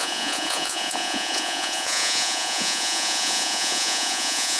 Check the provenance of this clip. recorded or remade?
remade